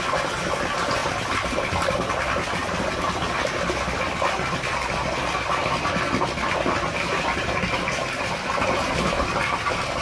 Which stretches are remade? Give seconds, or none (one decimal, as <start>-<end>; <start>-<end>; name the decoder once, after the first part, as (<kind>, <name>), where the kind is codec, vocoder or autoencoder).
none